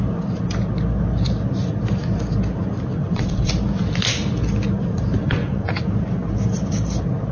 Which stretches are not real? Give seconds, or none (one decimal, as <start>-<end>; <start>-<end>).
2.9-3.5; 5.2-5.8